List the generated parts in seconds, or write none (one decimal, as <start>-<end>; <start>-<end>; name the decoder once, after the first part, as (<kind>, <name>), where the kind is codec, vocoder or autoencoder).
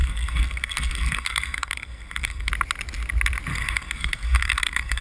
0.0-2.5 (codec, SNAC); 3.5-5.0